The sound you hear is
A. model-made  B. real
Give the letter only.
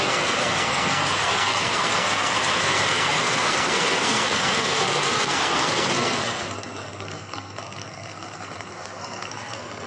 A